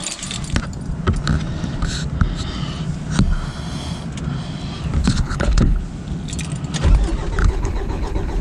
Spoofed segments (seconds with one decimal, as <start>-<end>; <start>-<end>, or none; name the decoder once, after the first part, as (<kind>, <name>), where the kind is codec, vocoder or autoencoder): 5.0-5.8 (codec, HILCodec); 7.4-8.4